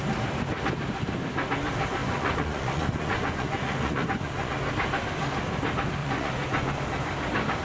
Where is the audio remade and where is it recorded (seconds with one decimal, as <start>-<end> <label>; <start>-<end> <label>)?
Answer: 0.0-2.0 recorded; 2.0-4.5 remade; 4.5-6.0 recorded; 6.0-6.8 remade; 6.8-7.6 recorded